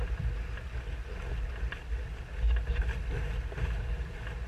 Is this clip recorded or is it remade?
recorded